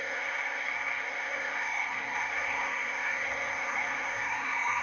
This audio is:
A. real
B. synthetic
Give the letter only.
B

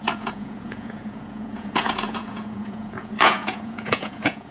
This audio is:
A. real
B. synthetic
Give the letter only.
B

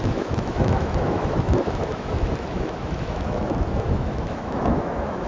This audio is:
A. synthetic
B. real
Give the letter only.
A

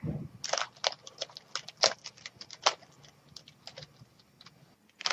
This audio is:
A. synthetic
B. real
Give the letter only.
B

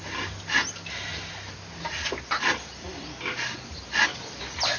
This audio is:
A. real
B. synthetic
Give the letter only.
A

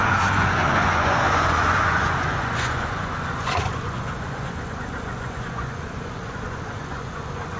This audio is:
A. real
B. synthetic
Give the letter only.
B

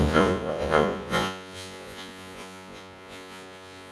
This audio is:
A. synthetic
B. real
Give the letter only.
A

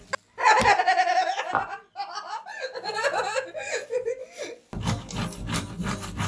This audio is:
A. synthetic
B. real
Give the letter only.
B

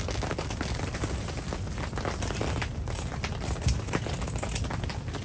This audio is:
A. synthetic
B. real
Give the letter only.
B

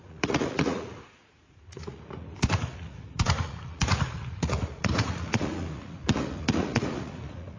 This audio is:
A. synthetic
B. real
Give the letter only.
A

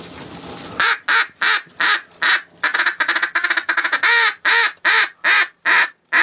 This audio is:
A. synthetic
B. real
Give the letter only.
B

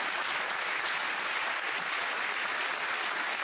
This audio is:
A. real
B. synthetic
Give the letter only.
A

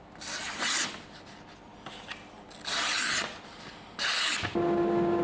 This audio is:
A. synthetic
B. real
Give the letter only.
B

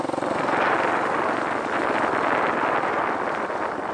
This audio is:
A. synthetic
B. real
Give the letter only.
B